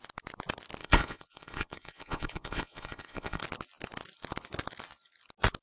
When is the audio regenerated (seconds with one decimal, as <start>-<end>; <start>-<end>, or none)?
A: 0.8-3.4